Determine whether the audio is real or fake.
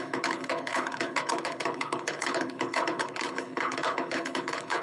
fake